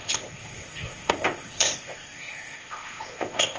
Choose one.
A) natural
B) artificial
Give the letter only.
B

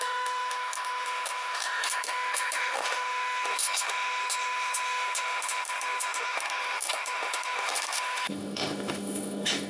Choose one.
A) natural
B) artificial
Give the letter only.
B